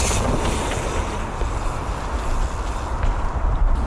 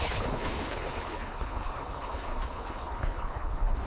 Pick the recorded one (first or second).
first